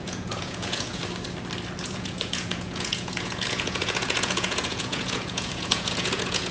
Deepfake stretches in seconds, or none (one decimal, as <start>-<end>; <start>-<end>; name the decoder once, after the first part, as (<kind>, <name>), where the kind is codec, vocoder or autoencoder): 0.0-1.0 (vocoder, Vocos); 1.8-6.5